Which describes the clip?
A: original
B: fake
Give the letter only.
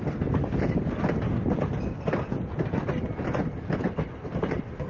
A